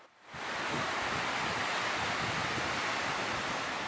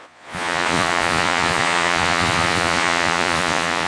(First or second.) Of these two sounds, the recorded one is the first